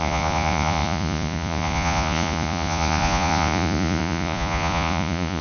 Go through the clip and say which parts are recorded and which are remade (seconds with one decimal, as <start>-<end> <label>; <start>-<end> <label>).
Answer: 0.0-5.4 remade